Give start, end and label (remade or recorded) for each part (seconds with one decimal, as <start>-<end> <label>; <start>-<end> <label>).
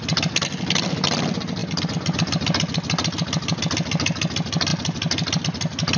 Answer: 0.0-6.0 recorded